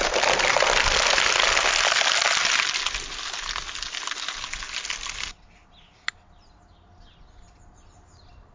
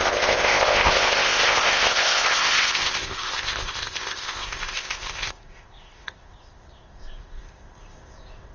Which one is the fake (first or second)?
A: second